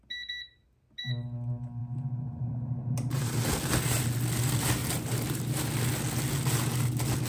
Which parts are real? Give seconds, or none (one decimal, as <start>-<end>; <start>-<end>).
0.0-1.8; 3.5-4.8; 5.7-7.3